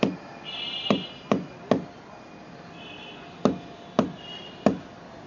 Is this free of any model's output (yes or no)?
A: yes